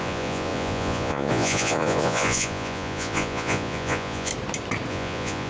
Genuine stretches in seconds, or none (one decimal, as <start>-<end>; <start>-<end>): 4.3-4.9